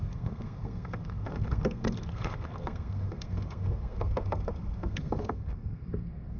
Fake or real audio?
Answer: fake